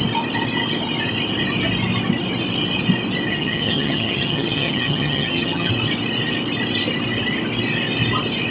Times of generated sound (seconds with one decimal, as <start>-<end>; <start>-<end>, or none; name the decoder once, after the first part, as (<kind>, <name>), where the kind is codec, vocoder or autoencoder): 3.3-5.7 (vocoder, HiFi-GAN)

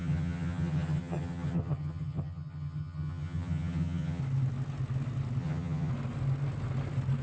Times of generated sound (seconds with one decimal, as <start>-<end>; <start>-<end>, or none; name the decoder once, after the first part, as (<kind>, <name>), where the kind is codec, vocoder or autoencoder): 0.0-4.2 (vocoder, HiFi-GAN); 5.4-5.9

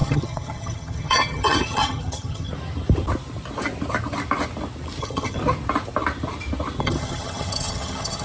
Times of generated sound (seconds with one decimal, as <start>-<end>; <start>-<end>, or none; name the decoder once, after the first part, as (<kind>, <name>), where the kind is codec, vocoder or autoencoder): 0.0-2.5 (vocoder, HiFi-GAN); 5.0-5.4; 6.8-8.2

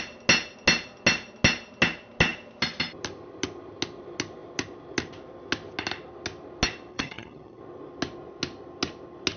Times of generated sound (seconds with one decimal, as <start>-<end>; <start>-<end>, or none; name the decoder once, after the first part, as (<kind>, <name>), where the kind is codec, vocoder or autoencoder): 6.9-7.6 (vocoder, HiFi-GAN)

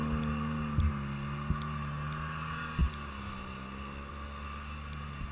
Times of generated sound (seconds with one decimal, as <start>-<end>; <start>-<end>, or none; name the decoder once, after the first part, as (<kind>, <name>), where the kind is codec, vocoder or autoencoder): none

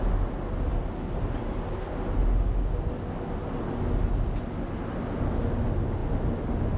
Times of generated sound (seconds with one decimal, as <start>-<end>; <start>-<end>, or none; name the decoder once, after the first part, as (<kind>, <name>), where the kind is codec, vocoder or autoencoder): none